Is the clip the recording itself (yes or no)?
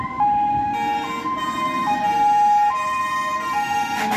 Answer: yes